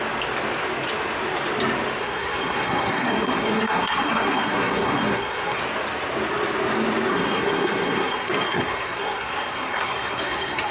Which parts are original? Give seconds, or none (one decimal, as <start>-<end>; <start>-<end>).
0.0-2.0; 5.6-7.1